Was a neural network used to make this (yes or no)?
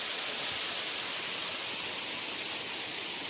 no